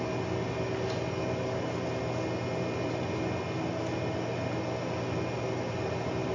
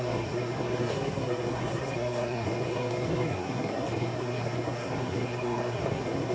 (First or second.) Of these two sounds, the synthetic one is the second